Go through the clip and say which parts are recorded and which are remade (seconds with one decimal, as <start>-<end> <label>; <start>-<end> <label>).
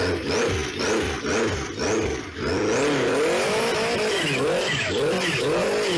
0.0-6.0 recorded